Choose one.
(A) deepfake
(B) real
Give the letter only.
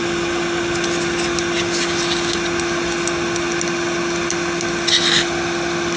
B